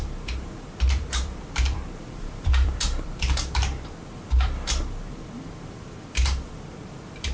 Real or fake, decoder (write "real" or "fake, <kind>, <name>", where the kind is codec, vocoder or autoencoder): fake, vocoder, BigVGAN v2